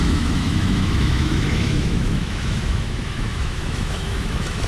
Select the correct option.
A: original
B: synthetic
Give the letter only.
B